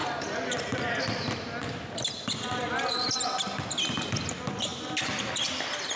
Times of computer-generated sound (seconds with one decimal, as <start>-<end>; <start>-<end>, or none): none